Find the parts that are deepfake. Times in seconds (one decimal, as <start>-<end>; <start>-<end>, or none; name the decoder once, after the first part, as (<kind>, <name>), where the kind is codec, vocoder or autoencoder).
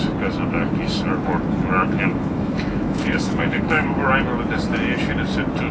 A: 2.1-4.1 (autoencoder, DAC-VAE)